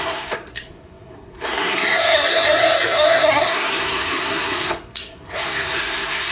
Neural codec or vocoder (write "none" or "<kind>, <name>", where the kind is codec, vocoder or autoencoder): codec, SNAC